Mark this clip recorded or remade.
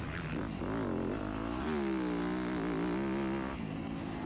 recorded